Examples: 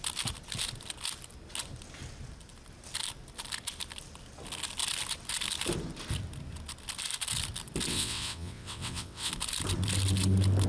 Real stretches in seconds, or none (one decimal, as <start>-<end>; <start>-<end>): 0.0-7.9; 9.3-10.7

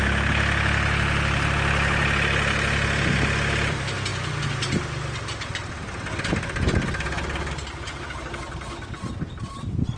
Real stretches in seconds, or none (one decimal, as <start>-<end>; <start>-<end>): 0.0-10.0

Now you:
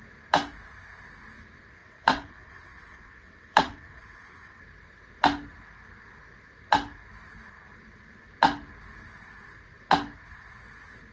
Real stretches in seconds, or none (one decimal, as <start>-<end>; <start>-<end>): 0.0-1.8; 4.6-11.1

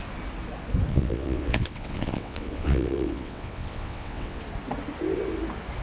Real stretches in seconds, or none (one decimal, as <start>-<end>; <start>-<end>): 0.0-0.9; 4.4-5.8